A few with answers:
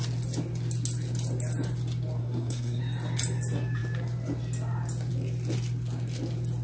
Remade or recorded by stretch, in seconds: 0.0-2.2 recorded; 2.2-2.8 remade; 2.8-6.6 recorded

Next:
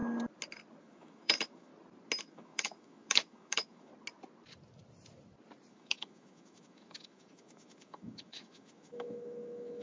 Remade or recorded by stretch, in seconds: 0.0-0.8 recorded; 0.8-1.7 remade; 1.7-2.2 recorded; 2.2-3.9 remade; 3.9-5.7 recorded; 5.7-9.8 remade

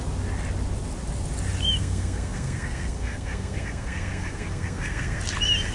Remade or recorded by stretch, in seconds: 0.0-1.8 recorded; 1.8-5.2 remade; 5.2-5.7 recorded

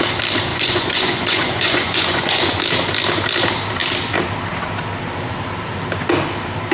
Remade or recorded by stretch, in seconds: 0.0-0.5 recorded; 0.5-2.6 remade; 2.6-6.7 recorded